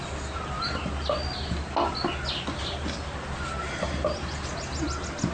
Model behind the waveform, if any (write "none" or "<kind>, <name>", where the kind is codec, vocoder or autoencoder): none